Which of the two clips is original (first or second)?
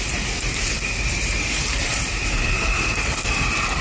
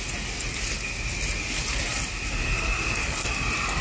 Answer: second